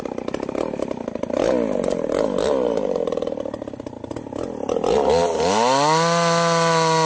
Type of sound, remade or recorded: recorded